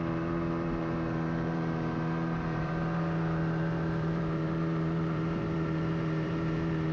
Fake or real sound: fake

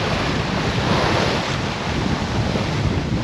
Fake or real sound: real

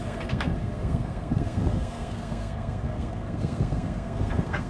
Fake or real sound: fake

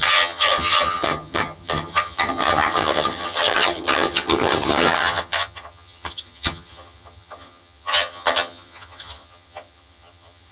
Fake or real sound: fake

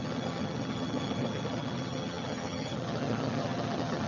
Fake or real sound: fake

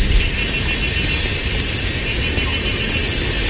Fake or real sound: real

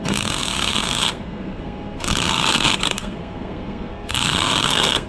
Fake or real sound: fake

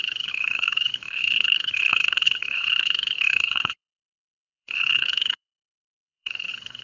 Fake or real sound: fake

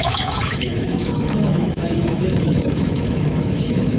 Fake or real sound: fake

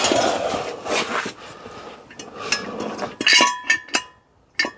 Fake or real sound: real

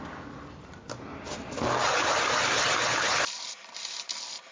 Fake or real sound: real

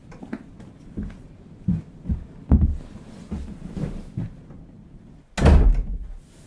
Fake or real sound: real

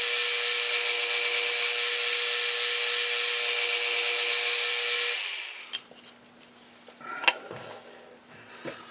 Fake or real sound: real